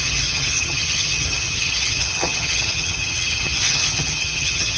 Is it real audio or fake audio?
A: fake